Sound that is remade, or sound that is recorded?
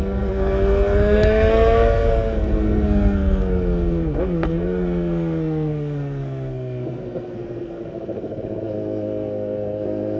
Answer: remade